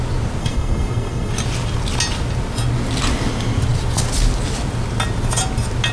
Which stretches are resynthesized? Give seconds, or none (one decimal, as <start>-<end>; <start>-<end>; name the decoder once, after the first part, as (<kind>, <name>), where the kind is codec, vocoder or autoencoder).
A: 0.4-1.3 (codec, SNAC)

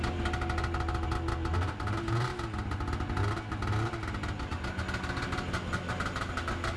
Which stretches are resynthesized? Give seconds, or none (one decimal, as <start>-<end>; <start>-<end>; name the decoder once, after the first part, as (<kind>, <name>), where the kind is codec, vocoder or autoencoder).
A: none

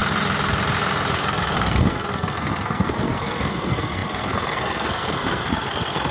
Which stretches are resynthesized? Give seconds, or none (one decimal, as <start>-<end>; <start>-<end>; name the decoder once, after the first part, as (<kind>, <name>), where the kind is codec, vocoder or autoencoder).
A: 1.1-6.1 (codec, SNAC)

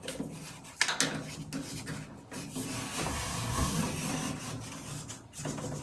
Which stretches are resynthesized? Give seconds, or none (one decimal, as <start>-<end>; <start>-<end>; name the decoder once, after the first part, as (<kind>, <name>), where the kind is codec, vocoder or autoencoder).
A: 3.1-3.8 (codec, SNAC)

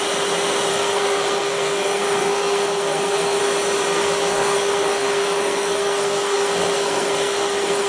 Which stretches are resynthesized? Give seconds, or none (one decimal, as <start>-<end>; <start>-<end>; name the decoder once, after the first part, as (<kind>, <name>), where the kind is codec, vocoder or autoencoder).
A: 0.7-3.4 (codec, SNAC); 3.9-7.9